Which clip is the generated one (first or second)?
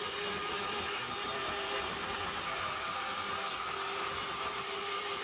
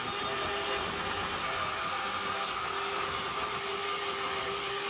first